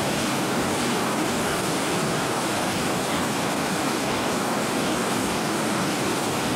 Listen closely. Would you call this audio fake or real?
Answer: fake